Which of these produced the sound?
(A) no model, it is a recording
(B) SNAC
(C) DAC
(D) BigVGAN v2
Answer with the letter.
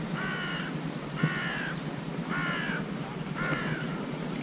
D